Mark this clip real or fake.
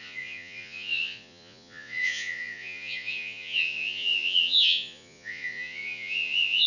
fake